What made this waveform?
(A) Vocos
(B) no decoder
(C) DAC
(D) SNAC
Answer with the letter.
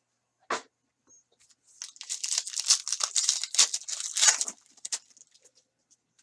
B